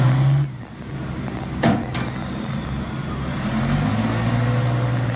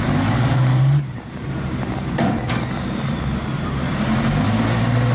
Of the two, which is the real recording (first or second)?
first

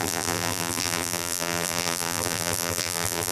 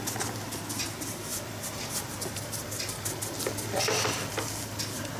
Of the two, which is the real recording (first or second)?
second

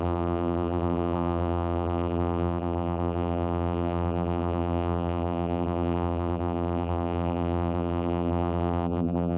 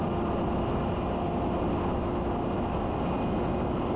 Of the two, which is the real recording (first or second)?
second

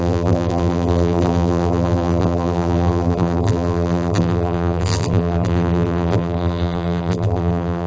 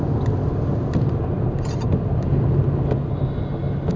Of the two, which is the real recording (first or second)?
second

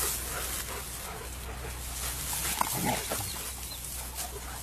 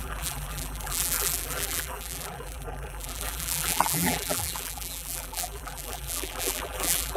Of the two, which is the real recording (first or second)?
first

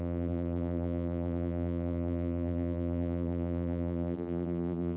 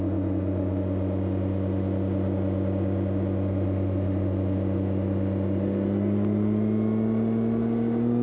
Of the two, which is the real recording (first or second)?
second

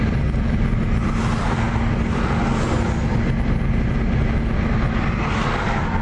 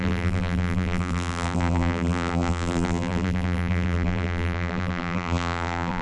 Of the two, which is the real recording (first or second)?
first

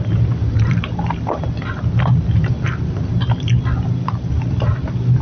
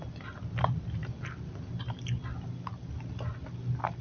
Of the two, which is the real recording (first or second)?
second